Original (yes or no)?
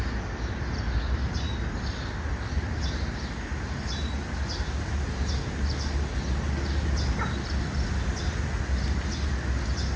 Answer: yes